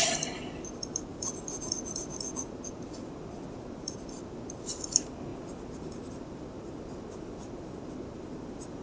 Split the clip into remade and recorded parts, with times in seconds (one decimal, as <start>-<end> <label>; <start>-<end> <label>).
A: 0.0-8.8 recorded